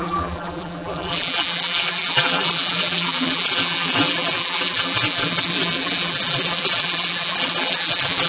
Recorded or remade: remade